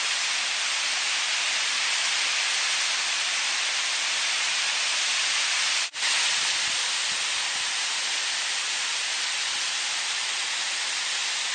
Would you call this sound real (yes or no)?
yes